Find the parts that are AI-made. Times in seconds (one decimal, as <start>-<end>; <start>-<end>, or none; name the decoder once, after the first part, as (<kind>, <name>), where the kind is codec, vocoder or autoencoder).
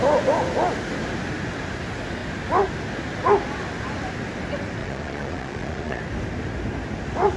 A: 4.8-6.0 (vocoder, Vocos)